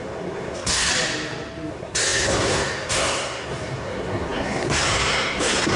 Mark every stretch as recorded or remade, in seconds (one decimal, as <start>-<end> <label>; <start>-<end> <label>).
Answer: 0.0-0.9 remade; 0.9-1.7 recorded; 1.7-5.8 remade